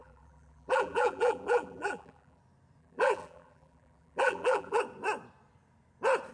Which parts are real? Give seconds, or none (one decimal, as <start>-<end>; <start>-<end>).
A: 2.4-2.8; 4.8-6.3